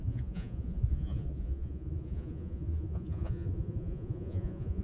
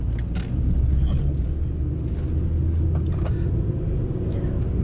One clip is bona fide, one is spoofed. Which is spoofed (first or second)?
first